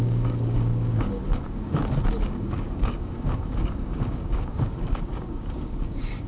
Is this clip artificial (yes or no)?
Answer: yes